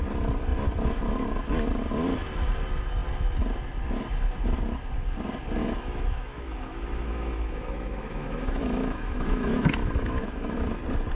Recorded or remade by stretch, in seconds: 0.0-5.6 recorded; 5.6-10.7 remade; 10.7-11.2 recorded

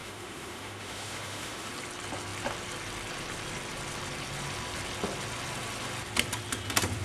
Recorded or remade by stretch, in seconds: 0.0-1.7 remade; 1.7-7.0 recorded

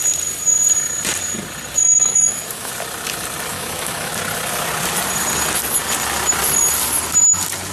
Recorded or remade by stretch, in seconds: 0.0-1.8 recorded; 1.8-2.7 remade; 2.7-3.5 recorded; 3.5-4.1 remade; 4.1-7.7 recorded

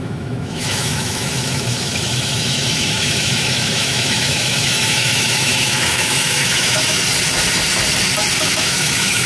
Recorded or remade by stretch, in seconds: 0.0-7.0 remade; 7.0-8.4 recorded; 8.4-9.3 remade

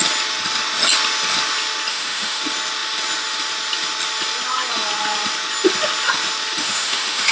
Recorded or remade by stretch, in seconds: 0.0-1.9 recorded; 1.9-2.4 remade; 2.4-6.6 recorded; 6.6-7.3 remade

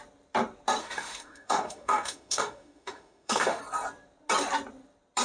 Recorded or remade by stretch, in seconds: 0.0-0.8 recorded; 0.8-3.6 remade; 3.6-5.2 recorded